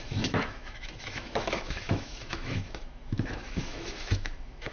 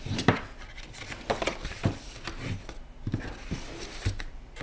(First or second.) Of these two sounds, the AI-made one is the first